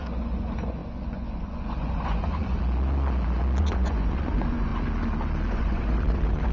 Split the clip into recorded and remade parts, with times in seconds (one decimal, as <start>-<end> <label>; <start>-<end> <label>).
0.0-2.6 remade; 2.6-3.6 recorded; 3.6-4.7 remade; 4.7-5.5 recorded; 5.5-6.5 remade